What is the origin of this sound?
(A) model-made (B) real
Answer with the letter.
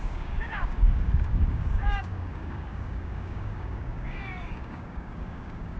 A